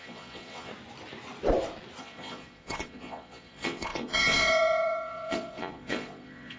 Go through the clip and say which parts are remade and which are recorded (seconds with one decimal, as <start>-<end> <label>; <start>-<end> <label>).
0.0-0.7 remade; 0.7-2.0 recorded; 2.0-6.6 remade